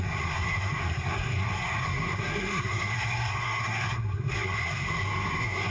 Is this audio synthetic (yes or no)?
yes